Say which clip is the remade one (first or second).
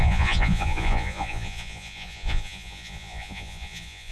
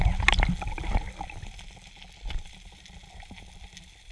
first